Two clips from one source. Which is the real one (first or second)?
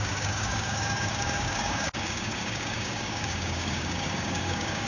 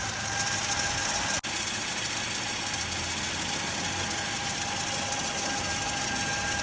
second